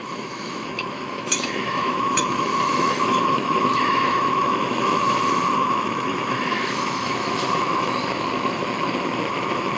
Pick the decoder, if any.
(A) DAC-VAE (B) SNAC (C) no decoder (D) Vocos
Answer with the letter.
A